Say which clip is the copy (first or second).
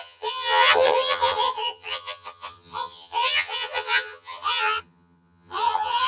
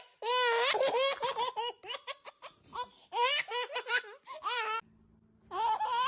first